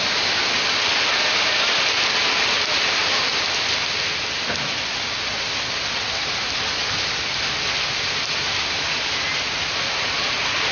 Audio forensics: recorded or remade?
recorded